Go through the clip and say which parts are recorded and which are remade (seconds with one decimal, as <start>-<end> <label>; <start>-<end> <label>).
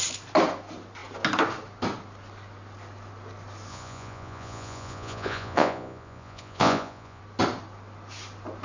0.0-3.7 recorded; 3.7-7.2 remade; 7.2-8.6 recorded